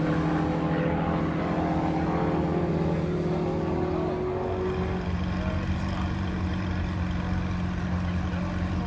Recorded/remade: recorded